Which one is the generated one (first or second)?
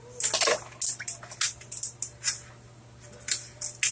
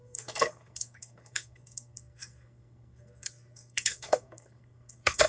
second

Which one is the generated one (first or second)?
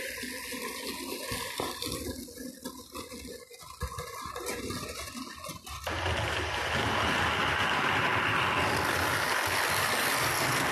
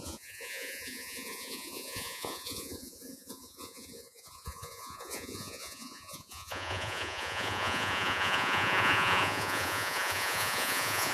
second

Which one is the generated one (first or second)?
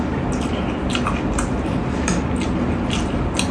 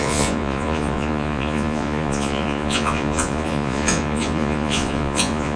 second